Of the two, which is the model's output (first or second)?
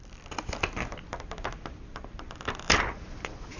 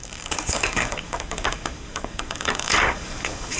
second